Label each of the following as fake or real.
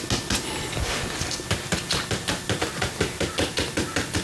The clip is real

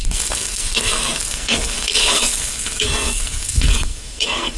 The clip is fake